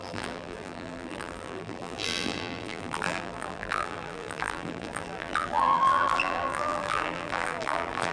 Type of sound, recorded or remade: remade